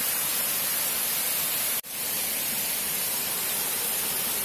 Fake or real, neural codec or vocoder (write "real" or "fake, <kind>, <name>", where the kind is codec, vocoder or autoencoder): real